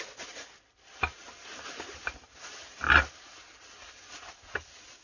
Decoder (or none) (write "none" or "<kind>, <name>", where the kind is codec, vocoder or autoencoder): none